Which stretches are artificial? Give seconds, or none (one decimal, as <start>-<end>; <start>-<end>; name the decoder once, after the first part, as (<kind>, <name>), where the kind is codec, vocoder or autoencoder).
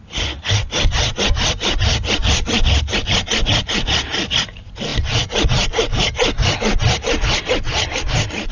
none